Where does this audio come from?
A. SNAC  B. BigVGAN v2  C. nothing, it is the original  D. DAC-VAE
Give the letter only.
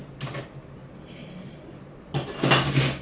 C